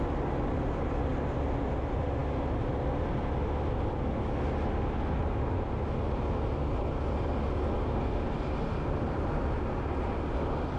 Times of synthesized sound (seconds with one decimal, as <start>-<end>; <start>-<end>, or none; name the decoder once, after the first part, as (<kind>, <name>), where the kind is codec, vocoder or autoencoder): none

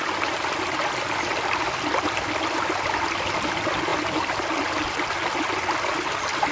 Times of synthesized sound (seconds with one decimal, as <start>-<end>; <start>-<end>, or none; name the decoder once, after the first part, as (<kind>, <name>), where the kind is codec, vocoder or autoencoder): none

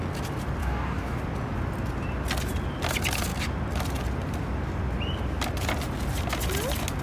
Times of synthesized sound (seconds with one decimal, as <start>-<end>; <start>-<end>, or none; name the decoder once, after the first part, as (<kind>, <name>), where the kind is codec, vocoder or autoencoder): 0.6-1.2 (codec, DAC)

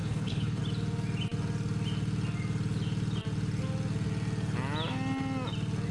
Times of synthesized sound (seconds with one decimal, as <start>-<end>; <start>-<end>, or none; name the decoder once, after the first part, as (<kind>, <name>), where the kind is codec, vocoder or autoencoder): 0.0-0.6 (codec, HILCodec)

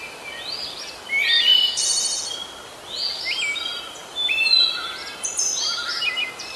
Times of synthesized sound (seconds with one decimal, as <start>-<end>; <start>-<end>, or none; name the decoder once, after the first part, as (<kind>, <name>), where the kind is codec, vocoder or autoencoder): 1.5-2.2 (vocoder, BigVGAN v2); 5.4-6.0